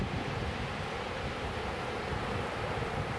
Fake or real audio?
real